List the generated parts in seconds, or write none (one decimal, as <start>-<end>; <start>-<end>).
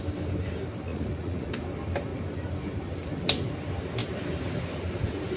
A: 0.9-1.5